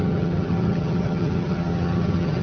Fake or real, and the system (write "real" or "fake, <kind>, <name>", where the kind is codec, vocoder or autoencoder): fake, vocoder, HiFi-GAN